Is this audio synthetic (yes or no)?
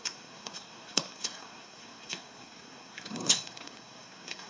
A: yes